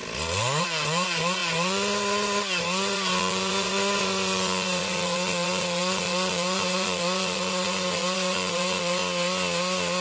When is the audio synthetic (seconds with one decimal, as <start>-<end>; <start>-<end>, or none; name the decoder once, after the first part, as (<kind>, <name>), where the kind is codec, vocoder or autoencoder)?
0.6-9.0 (vocoder, Vocos)